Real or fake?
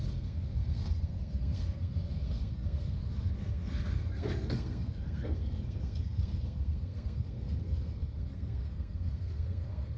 fake